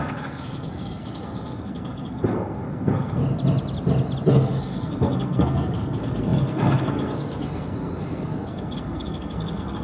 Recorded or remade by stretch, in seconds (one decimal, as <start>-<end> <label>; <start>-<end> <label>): 0.0-3.2 remade; 3.2-4.3 recorded; 4.3-9.8 remade